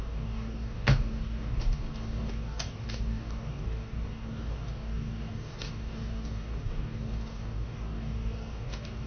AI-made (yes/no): yes